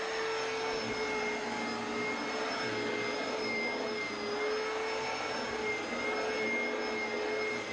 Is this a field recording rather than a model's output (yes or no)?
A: yes